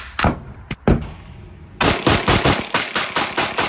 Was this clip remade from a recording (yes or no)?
no